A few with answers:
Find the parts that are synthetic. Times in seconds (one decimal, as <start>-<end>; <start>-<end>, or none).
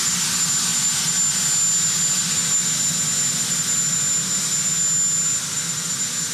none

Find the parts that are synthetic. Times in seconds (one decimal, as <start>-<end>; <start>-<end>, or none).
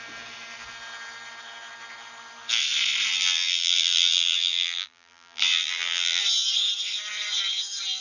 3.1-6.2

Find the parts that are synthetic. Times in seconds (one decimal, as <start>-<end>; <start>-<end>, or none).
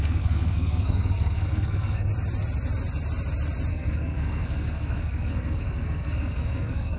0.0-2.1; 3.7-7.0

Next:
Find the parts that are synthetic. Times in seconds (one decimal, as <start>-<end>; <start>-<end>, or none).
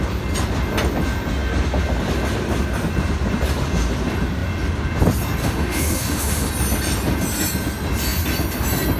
5.4-6.5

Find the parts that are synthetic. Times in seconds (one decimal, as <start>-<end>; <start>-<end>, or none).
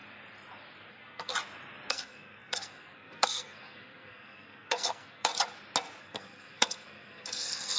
0.9-1.3; 1.9-5.3; 6.0-7.8